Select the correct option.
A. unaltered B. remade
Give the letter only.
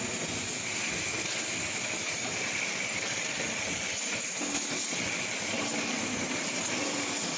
A